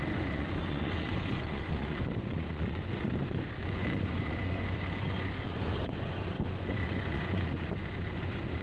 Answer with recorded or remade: remade